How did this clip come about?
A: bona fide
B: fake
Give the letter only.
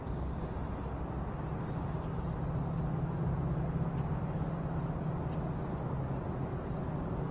A